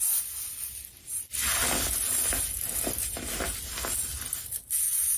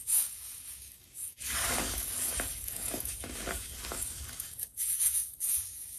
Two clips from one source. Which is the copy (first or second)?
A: second